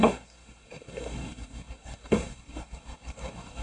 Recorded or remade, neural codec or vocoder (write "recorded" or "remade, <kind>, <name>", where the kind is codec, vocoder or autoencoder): remade, codec, SNAC